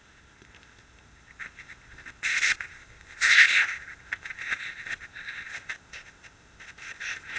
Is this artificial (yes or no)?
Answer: yes